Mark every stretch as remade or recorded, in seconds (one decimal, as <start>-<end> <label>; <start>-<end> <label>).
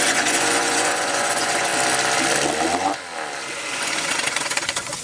0.0-1.7 remade; 1.7-3.5 recorded; 3.5-5.0 remade